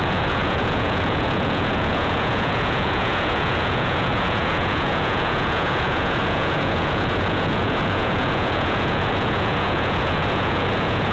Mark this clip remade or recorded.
remade